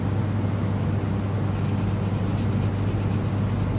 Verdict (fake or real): real